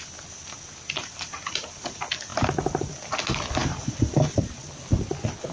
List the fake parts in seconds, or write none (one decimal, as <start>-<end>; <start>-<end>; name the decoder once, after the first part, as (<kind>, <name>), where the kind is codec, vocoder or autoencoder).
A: 1.0-1.6 (vocoder, BigVGAN v2); 3.6-4.6